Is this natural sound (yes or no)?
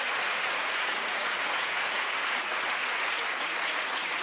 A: no